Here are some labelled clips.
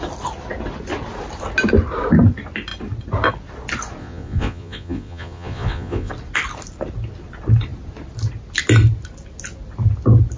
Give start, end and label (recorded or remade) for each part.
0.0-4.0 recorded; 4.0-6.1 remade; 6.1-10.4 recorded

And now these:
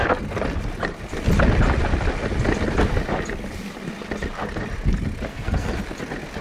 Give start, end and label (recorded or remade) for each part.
0.0-5.3 recorded; 5.3-5.8 remade; 5.8-6.4 recorded

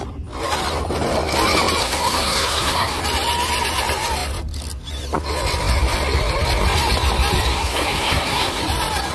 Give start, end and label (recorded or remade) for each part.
0.0-1.8 recorded; 1.8-3.0 remade; 3.0-7.5 recorded; 7.5-8.6 remade; 8.6-9.1 recorded

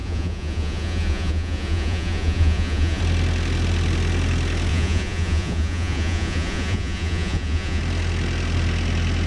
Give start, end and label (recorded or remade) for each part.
0.0-3.0 remade; 3.0-4.7 recorded; 4.7-7.8 remade; 7.8-9.3 recorded

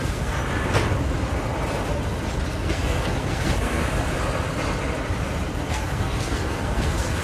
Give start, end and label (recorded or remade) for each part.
0.0-0.4 remade; 0.4-2.5 recorded; 2.5-3.8 remade; 3.8-5.7 recorded; 5.7-7.2 remade

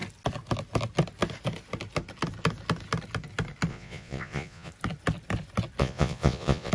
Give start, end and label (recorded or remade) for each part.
0.0-3.7 recorded; 3.7-4.7 remade; 4.7-5.8 recorded; 5.8-6.7 remade